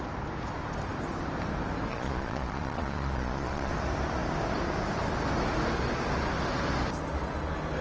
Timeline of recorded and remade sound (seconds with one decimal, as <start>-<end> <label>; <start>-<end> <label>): 0.0-1.9 recorded; 1.9-3.7 remade; 3.7-7.8 recorded